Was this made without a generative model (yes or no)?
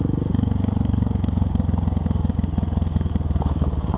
no